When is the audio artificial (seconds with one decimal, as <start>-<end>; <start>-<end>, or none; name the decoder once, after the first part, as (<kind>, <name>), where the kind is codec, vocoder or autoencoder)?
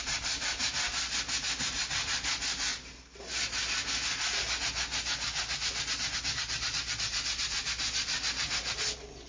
none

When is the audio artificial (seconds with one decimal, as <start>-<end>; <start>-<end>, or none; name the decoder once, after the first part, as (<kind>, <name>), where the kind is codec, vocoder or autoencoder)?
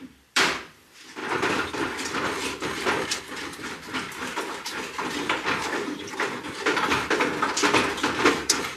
0.0-8.8 (vocoder, BigVGAN v2)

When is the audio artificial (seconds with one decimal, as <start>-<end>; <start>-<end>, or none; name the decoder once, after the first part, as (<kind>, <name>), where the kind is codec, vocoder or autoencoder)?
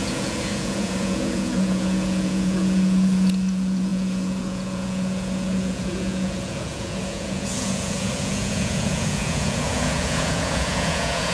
0.0-11.3 (vocoder, Vocos)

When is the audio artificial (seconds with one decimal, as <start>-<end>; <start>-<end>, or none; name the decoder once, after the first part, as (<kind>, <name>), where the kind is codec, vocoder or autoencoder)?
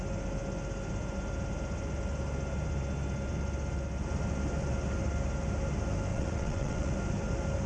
6.1-6.9 (vocoder, WaveNeXt)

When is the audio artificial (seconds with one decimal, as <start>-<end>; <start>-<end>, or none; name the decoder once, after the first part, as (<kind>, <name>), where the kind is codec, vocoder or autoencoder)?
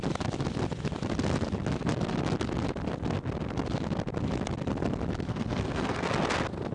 5.3-6.1 (codec, SNAC)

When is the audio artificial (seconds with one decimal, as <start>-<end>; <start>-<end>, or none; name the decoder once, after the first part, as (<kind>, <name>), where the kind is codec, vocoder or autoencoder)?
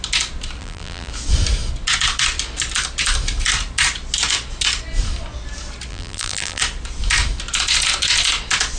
0.6-1.1 (vocoder, BigVGAN v2); 5.9-6.6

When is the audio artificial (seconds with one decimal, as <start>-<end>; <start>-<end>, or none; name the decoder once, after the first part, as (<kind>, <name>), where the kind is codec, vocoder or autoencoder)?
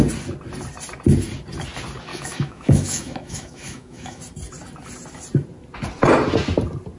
2.1-4.2 (autoencoder, DAC-VAE)